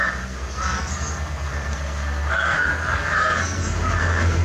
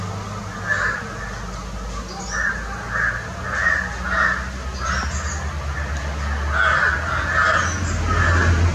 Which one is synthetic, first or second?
first